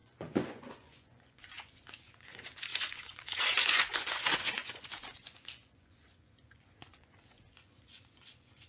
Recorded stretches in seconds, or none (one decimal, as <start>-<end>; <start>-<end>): none